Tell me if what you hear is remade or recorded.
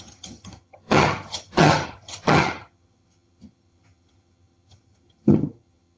remade